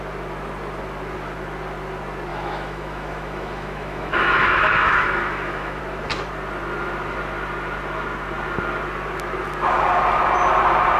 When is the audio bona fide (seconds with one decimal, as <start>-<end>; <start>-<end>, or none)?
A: 0.0-2.3; 5.8-11.0